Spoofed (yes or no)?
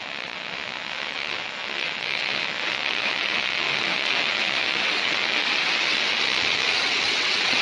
yes